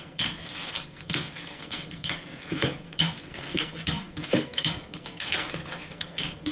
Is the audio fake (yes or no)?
yes